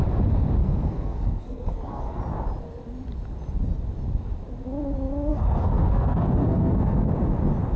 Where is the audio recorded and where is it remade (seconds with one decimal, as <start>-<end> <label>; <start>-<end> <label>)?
0.0-0.6 recorded; 0.6-2.2 remade; 2.2-5.3 recorded; 5.3-7.1 remade; 7.1-7.8 recorded